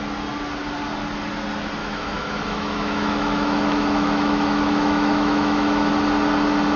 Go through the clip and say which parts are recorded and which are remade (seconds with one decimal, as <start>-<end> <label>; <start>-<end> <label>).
0.0-1.8 recorded; 1.8-5.9 remade; 5.9-6.8 recorded